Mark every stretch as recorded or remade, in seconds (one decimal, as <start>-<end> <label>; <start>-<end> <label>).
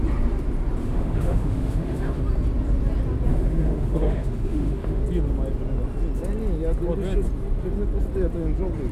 0.0-0.8 recorded; 0.8-2.2 remade; 2.2-3.3 recorded; 3.3-5.0 remade; 5.0-8.9 recorded